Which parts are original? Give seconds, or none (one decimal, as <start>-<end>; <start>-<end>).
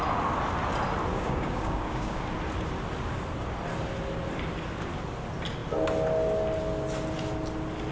0.0-1.1; 2.3-7.9